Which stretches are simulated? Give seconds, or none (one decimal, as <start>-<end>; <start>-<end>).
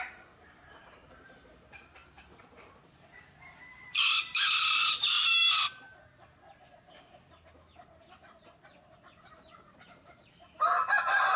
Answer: 0.0-5.4; 9.2-11.4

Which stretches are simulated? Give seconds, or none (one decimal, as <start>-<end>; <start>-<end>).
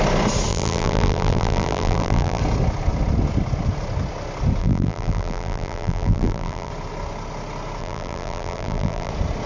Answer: 0.5-2.4; 4.6-6.7; 7.8-9.1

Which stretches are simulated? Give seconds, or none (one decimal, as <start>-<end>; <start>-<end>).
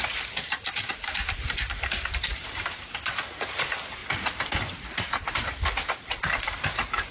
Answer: 0.0-4.0; 6.3-7.1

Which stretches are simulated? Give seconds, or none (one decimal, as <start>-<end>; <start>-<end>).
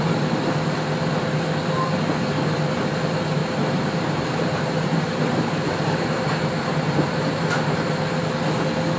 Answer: 3.4-8.6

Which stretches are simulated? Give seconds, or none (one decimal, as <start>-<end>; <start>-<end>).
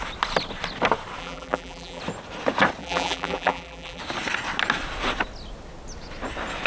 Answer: 1.2-2.0; 2.8-4.0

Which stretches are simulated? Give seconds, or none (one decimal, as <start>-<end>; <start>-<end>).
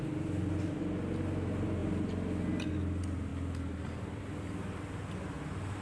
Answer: none